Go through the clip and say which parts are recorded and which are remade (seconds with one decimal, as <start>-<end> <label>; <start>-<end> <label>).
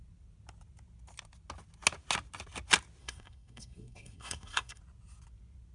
0.0-3.0 recorded; 3.0-4.8 remade; 4.8-5.7 recorded